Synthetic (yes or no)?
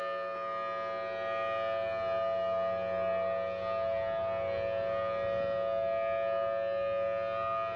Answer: no